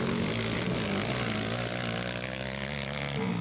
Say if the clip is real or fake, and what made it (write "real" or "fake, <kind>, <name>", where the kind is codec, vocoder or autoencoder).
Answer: real